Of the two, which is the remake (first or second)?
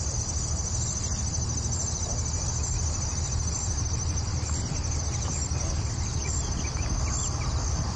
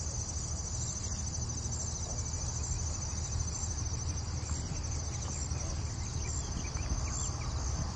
first